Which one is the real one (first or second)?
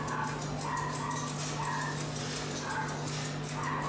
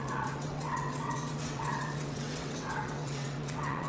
first